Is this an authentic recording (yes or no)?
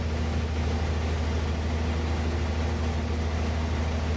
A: yes